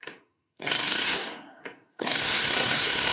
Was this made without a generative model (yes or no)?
no